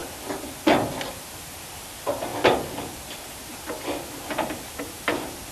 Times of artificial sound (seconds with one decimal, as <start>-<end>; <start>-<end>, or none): 1.1-2.3; 4.1-5.5